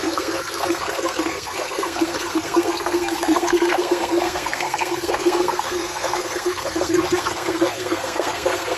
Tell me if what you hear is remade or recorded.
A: remade